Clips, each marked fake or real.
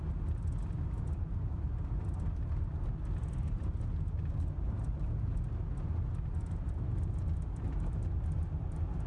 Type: real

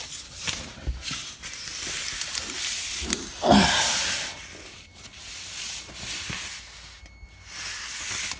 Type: real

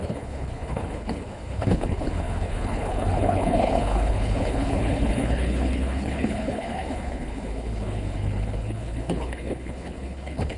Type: fake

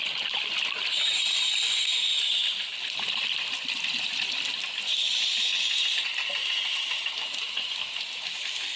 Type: real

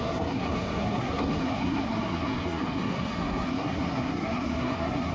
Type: fake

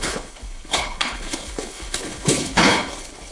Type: fake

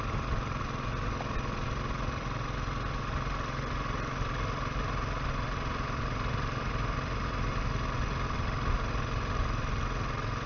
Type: real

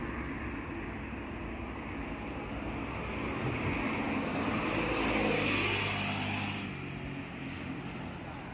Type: real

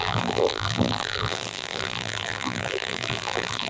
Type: fake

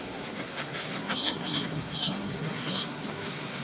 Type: fake